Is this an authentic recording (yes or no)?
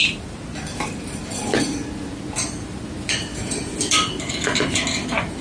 yes